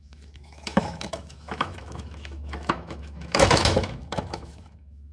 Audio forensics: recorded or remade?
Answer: remade